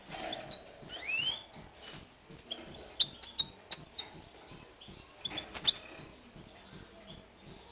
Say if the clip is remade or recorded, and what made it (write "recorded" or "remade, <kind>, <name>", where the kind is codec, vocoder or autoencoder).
recorded